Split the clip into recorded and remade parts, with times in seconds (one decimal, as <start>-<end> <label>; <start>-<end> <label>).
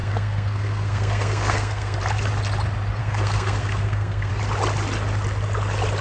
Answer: 0.0-2.0 remade; 2.0-3.0 recorded; 3.0-4.3 remade; 4.3-6.0 recorded